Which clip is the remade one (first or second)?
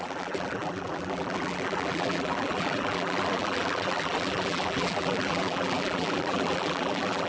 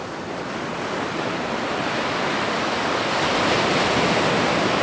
first